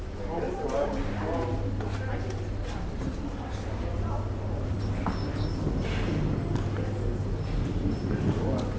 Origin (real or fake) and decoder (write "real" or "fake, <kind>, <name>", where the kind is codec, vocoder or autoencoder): real